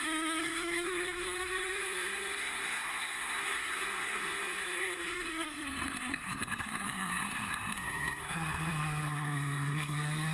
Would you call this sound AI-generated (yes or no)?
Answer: yes